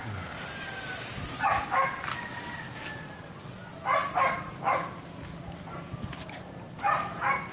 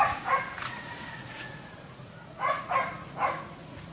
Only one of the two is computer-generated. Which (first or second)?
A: second